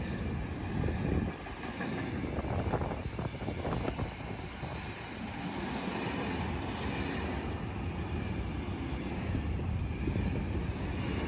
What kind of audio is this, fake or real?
real